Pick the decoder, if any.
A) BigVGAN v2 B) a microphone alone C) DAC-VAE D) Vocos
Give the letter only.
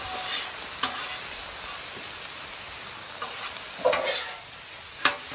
B